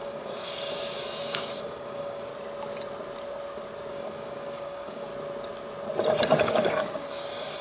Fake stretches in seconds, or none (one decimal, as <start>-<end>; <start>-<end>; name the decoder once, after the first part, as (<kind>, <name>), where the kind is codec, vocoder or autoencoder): 0.0-2.3 (codec, DAC); 3.9-5.1; 6.4-7.6